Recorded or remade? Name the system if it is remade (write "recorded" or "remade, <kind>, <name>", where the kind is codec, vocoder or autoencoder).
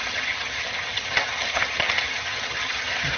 remade, vocoder, HiFi-GAN